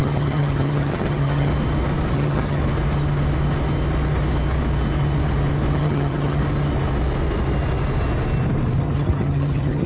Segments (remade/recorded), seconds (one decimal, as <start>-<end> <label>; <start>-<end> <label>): 0.0-1.5 remade; 1.5-2.1 recorded; 2.1-2.6 remade; 2.6-5.7 recorded; 5.7-6.4 remade; 6.4-8.8 recorded; 8.8-9.9 remade